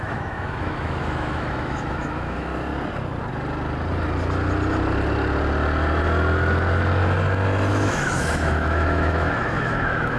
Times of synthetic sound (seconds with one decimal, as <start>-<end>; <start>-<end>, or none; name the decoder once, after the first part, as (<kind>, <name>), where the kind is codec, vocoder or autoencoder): 0.0-2.5 (autoencoder, DAC-VAE); 7.7-10.2